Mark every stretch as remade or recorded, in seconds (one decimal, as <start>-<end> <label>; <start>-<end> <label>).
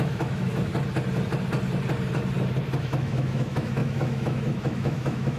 0.0-0.7 remade; 0.7-2.8 recorded; 2.8-5.4 remade